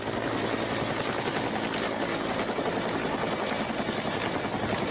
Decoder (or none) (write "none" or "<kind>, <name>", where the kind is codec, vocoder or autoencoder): none